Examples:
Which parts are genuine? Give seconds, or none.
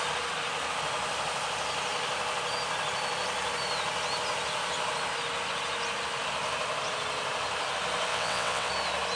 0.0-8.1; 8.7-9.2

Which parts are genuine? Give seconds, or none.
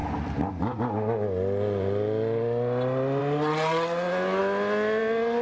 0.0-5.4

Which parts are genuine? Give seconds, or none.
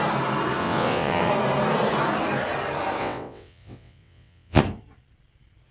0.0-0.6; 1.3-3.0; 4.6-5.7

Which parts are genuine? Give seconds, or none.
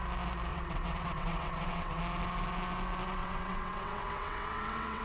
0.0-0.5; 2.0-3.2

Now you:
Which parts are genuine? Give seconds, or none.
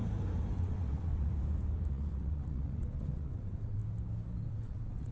0.0-0.6; 1.3-1.9; 3.8-4.5